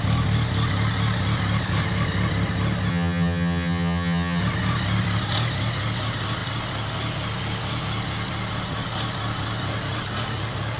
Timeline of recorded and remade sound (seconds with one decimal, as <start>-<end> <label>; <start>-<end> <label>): 0.0-2.9 recorded; 2.9-4.4 remade; 4.4-10.8 recorded